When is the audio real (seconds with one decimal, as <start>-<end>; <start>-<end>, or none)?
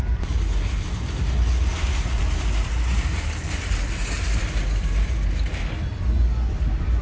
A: 5.6-6.5